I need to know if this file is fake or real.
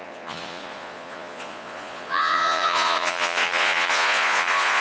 fake